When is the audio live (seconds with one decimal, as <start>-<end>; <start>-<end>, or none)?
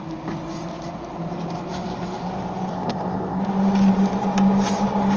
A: 0.0-2.7; 3.4-5.2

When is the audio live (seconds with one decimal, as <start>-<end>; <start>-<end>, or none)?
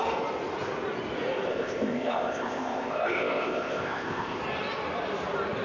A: 0.0-1.5; 4.4-5.6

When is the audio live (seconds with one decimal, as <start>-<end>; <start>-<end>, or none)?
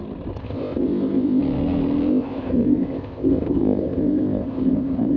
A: 0.0-0.4; 1.4-2.1